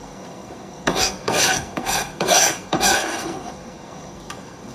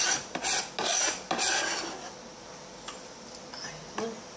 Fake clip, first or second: first